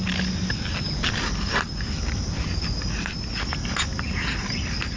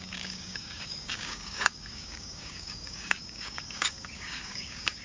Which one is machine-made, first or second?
second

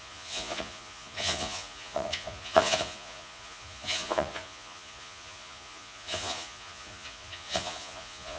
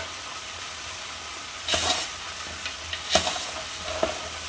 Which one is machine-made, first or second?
first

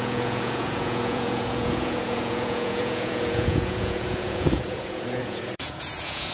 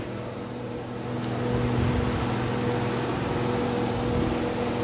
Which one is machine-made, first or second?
first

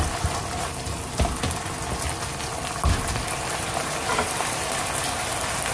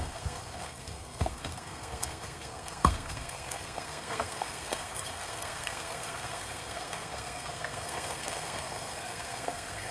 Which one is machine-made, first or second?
second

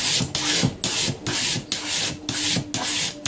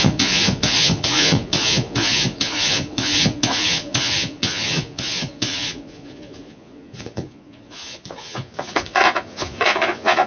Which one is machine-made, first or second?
second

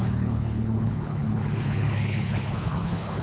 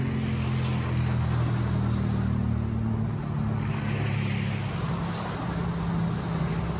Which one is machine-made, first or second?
first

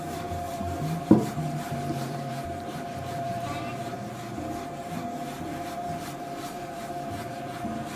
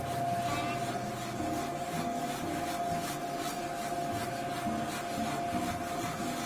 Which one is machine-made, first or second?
first